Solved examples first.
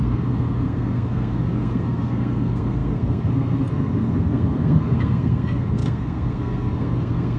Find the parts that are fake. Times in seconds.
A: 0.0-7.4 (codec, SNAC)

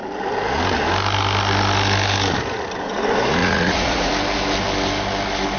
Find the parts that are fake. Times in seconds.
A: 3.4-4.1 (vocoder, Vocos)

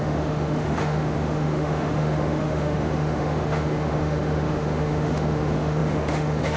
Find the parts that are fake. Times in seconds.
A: 0.0-6.6 (autoencoder, DAC-VAE)